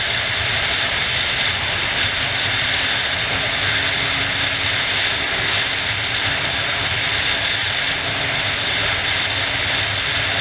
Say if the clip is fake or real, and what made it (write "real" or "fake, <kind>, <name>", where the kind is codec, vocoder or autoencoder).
real